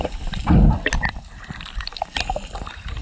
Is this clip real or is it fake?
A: real